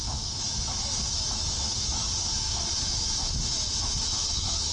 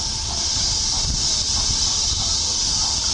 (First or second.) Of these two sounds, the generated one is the first